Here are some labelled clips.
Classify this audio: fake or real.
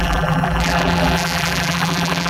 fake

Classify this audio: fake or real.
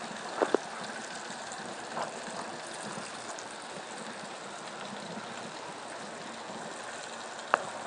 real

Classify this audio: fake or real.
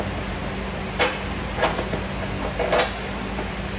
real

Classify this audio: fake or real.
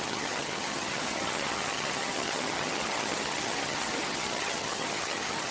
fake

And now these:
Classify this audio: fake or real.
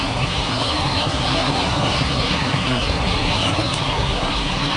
fake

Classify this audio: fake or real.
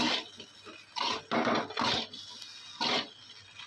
real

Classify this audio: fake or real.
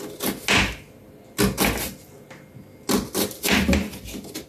real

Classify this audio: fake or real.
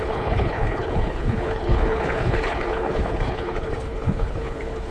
fake